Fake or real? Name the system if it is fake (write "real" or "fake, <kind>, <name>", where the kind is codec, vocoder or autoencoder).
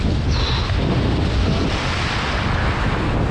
real